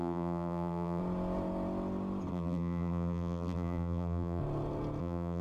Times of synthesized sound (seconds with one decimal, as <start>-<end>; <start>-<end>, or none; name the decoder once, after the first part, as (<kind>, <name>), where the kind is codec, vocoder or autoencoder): 0.0-1.0 (vocoder, BigVGAN v2); 2.3-4.4; 5.0-5.4